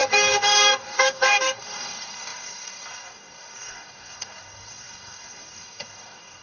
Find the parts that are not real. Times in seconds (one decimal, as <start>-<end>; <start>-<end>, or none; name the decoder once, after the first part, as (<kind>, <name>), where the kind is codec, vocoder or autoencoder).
0.0-6.4 (codec, DAC)

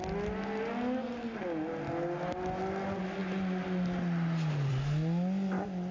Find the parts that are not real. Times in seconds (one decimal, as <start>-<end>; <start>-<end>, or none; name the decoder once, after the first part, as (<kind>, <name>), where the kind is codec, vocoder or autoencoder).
none

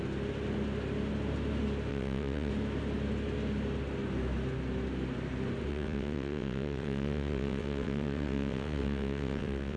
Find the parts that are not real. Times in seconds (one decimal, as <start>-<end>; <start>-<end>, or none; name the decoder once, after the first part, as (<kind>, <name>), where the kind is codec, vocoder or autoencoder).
1.9-2.5 (vocoder, WaveNeXt); 5.7-9.8

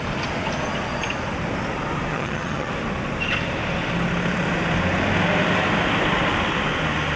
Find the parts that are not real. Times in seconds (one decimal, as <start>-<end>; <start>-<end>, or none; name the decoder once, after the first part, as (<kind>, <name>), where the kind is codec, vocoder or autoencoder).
2.1-2.7 (vocoder, HiFi-GAN)

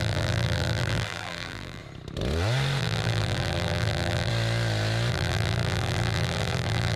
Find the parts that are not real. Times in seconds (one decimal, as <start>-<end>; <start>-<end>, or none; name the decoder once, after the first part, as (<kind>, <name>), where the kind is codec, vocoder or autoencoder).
0.0-1.8 (vocoder, BigVGAN v2); 2.8-4.3; 5.1-7.0

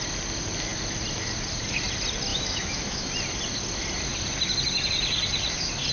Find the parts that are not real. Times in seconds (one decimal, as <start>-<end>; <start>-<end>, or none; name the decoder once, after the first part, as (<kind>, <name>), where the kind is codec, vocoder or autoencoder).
2.3-3.1 (autoencoder, DAC-VAE)

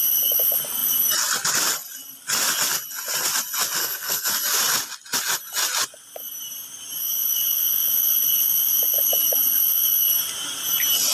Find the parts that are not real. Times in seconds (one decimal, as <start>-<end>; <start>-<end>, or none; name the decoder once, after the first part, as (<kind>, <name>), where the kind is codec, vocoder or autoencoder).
3.8-4.3 (codec, SNAC)

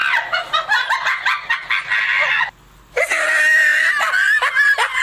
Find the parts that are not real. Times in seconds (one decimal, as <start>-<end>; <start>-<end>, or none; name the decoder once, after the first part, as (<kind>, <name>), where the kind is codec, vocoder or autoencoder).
none